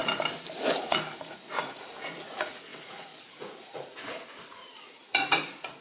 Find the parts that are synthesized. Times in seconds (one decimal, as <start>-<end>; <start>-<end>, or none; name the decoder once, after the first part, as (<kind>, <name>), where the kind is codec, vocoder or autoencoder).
0.8-5.8 (vocoder, Vocos)